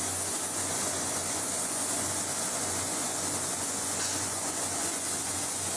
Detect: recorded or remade remade